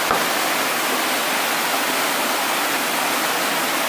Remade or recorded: recorded